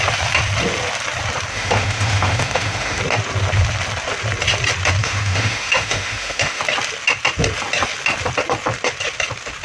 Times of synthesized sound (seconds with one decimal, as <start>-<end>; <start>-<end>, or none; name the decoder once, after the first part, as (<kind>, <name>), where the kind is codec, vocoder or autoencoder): 1.5-3.0 (autoencoder, DAC-VAE); 5.0-6.6